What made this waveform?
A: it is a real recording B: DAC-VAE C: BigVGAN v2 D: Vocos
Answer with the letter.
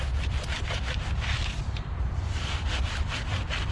C